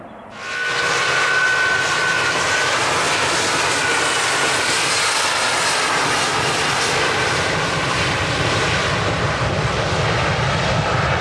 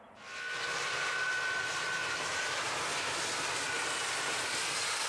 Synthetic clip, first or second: second